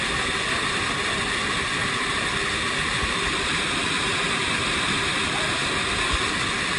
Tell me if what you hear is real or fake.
real